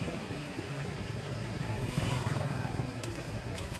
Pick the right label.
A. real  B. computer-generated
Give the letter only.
B